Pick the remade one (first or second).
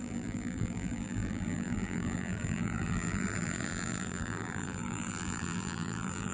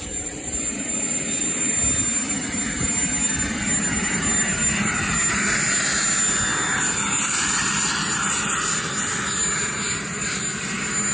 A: first